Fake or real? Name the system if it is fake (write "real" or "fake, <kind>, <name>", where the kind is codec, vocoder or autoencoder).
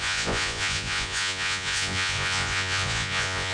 fake, vocoder, Vocos